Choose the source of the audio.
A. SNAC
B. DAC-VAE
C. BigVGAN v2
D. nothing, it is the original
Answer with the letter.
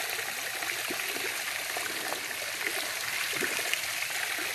D